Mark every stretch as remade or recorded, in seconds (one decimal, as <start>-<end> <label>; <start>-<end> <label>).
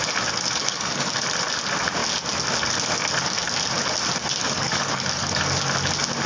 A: 0.0-0.6 recorded; 0.6-1.1 remade; 1.1-4.4 recorded; 4.4-5.4 remade; 5.4-6.3 recorded